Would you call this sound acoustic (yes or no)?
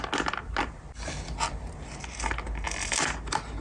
yes